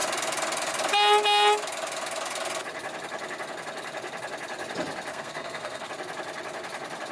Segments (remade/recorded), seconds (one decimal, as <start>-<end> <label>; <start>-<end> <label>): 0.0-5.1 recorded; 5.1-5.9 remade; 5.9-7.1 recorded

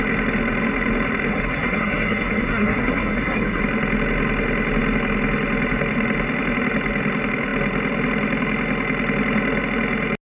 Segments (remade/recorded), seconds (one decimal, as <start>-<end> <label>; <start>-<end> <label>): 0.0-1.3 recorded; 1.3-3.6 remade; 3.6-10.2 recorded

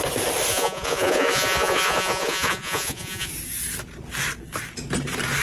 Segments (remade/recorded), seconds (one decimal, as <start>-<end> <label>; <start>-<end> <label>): 0.0-0.5 recorded; 0.5-3.3 remade; 3.3-5.4 recorded